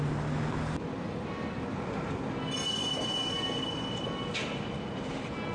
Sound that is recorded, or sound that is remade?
recorded